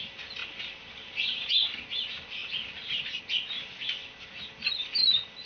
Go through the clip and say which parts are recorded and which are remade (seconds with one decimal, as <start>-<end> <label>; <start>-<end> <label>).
0.0-0.4 recorded; 0.4-1.5 remade; 1.5-2.4 recorded; 2.4-3.2 remade; 3.2-5.5 recorded